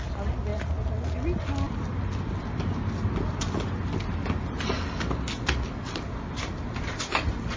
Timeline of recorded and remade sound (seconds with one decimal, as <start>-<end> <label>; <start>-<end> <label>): 0.0-7.6 recorded